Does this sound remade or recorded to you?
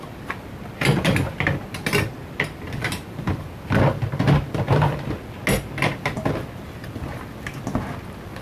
recorded